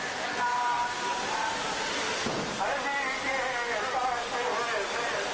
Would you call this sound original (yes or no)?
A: yes